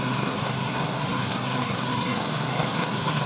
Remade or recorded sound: remade